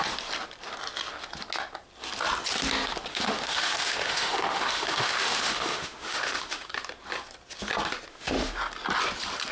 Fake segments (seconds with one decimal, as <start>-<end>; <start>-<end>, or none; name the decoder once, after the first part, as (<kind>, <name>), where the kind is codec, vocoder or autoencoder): 3.1-6.7 (autoencoder, DAC-VAE); 8.1-8.6